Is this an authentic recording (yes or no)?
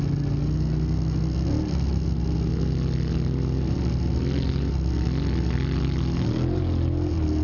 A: yes